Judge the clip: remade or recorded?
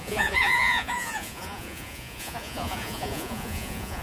remade